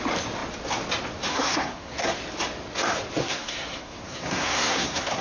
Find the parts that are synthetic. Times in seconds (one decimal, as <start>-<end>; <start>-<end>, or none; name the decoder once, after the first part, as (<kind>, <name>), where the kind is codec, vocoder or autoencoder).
1.3-2.2 (codec, SNAC); 3.2-5.2

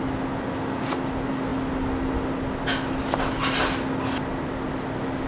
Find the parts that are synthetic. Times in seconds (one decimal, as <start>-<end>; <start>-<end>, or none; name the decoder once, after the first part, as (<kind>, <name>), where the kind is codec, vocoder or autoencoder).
none

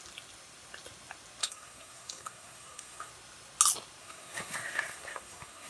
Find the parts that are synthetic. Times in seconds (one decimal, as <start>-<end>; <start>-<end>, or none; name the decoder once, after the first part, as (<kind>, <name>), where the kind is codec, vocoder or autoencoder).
1.4-3.1 (codec, SNAC); 4.0-5.7

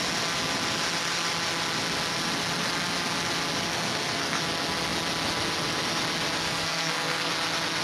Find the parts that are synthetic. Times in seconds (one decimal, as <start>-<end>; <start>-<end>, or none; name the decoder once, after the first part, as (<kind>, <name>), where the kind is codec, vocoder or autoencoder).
3.7-4.4 (codec, SNAC); 6.4-7.3

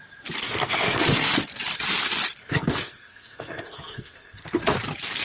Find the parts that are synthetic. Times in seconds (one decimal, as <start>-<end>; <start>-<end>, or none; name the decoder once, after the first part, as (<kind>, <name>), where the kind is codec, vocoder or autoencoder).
0.4-1.0 (codec, SNAC); 2.4-4.6

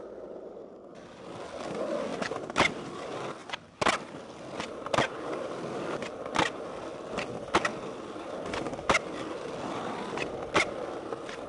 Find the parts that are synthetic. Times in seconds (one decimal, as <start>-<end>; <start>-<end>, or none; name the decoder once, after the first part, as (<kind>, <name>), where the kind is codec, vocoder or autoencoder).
none

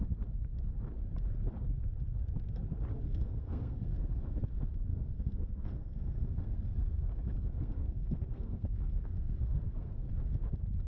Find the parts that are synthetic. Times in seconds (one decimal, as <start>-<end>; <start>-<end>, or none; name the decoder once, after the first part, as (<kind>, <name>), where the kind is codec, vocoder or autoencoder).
2.9-4.4 (codec, SNAC); 4.9-10.1

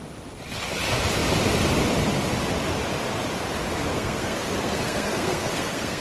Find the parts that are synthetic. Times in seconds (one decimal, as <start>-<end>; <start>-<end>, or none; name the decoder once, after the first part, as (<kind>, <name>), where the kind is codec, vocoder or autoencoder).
3.9-6.0 (codec, SNAC)